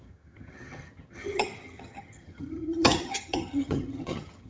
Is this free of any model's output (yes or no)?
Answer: no